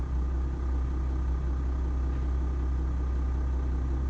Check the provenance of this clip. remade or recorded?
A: recorded